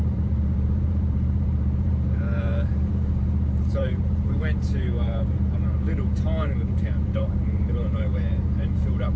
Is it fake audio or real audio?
fake